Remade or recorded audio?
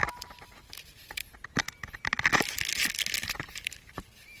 recorded